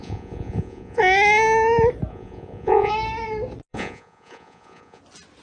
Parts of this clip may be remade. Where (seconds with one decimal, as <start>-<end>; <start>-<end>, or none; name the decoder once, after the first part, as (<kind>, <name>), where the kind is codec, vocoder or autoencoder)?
0.0-1.0 (vocoder, Vocos); 2.1-2.9; 3.7-5.0